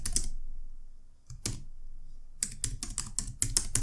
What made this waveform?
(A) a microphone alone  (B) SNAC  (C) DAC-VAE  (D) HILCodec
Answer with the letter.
A